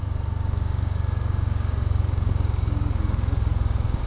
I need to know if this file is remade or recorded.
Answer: remade